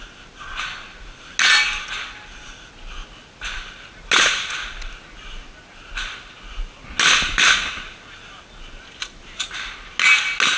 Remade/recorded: recorded